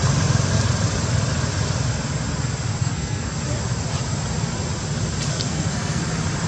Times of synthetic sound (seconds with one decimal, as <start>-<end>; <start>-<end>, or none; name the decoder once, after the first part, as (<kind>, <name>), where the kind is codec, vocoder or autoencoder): 2.8-3.4 (codec, SNAC); 5.3-6.0